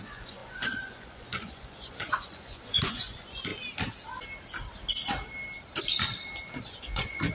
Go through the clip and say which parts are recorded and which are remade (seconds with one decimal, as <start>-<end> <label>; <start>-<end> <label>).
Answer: 0.0-3.5 remade; 3.5-6.6 recorded; 6.6-7.3 remade